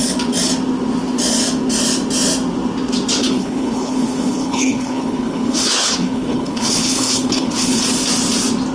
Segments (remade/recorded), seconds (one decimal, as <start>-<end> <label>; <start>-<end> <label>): 0.0-3.2 recorded; 3.2-7.8 remade; 7.8-8.7 recorded